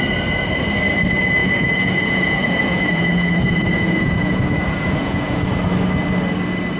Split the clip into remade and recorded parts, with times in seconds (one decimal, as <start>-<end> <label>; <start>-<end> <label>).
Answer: 0.0-1.4 recorded; 1.4-5.4 remade; 5.4-6.8 recorded